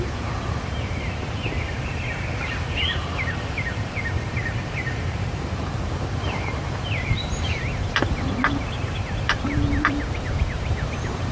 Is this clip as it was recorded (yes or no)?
no